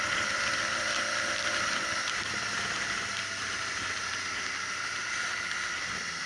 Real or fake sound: real